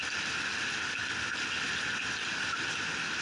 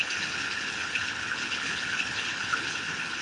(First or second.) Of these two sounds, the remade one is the second